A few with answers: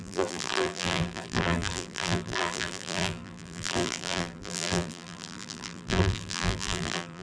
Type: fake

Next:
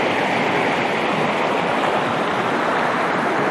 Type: real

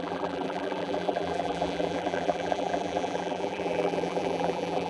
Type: fake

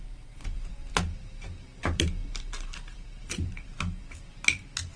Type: fake